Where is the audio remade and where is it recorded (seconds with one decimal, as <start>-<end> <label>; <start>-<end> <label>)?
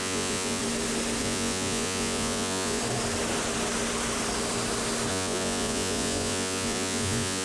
0.0-0.6 remade; 0.6-1.2 recorded; 1.2-2.8 remade; 2.8-5.1 recorded; 5.1-7.4 remade